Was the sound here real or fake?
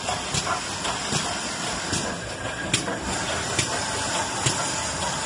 real